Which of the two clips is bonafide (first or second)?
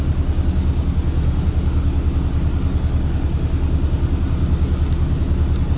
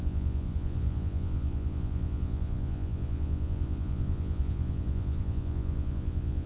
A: first